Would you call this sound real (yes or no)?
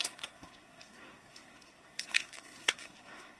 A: no